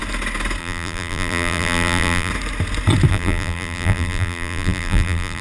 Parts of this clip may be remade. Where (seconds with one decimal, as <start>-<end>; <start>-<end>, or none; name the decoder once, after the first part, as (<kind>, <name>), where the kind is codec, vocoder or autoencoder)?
0.6-2.3 (vocoder, BigVGAN v2); 3.1-5.4